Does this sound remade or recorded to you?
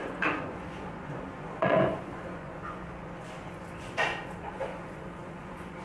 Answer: remade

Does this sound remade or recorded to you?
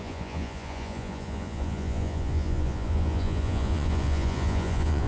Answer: remade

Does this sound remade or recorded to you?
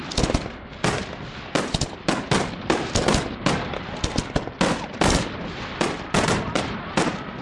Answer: recorded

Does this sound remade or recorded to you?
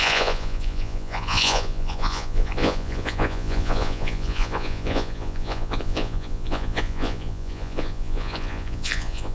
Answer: remade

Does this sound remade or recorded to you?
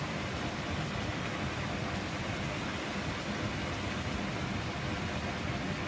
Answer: recorded